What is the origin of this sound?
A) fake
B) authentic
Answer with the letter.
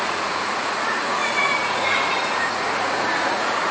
A